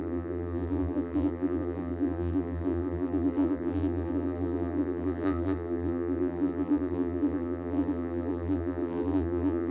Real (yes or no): no